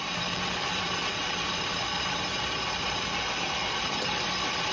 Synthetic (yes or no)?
yes